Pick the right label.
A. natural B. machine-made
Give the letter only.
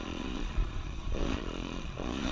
B